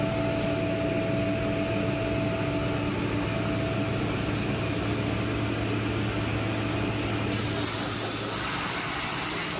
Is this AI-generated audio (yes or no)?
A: no